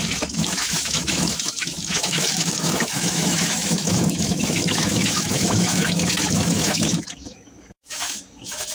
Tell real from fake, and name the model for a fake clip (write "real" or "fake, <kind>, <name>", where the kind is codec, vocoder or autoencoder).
fake, autoencoder, DAC-VAE